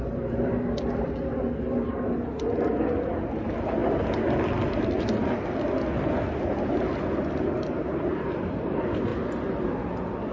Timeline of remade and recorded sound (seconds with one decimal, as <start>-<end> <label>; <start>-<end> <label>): 0.0-10.3 recorded